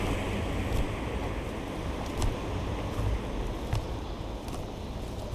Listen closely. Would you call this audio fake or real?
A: real